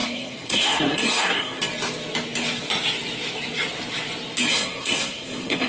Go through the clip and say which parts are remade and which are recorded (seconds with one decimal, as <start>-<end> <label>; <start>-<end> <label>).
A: 0.0-1.6 remade; 1.6-4.5 recorded; 4.5-5.7 remade